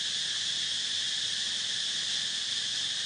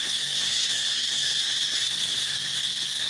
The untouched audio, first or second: first